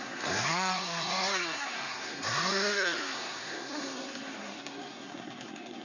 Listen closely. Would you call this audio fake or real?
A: fake